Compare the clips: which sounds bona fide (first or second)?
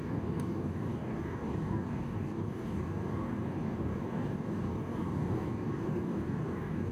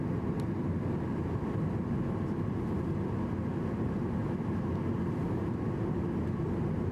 second